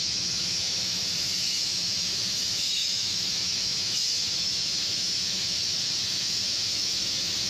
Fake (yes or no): yes